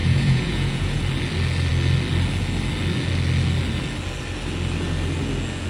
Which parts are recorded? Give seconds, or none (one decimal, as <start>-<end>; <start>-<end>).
1.0-5.7

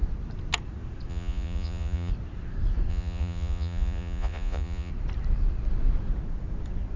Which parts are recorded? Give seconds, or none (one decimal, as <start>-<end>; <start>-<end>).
0.0-1.1; 2.1-2.9; 4.9-7.0

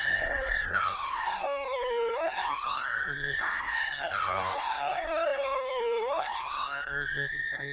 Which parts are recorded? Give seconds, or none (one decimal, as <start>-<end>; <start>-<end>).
none

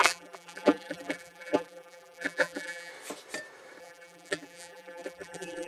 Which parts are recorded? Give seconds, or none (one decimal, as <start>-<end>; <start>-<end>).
2.9-3.8

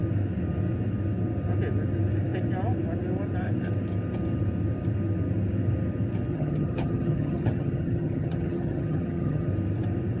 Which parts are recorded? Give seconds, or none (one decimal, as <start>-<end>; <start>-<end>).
0.0-6.3; 9.5-10.2

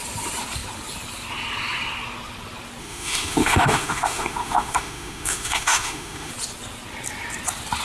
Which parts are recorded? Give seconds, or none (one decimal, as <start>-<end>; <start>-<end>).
0.0-2.8; 6.3-7.8

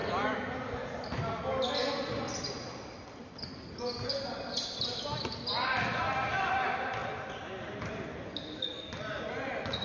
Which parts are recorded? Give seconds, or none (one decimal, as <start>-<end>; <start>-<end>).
0.0-9.8

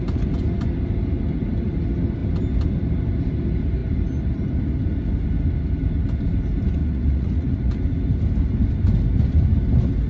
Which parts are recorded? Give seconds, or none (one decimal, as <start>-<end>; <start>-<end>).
0.0-6.8; 7.7-10.1